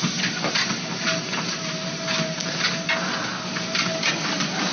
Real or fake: real